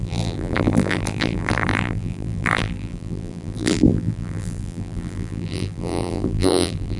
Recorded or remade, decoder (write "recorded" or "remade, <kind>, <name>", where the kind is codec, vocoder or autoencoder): remade, vocoder, BigVGAN v2